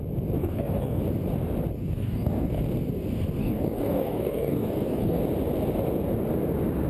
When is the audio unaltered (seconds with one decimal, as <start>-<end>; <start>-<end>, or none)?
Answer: 0.0-0.4; 1.0-1.8; 2.6-3.4; 5.2-6.9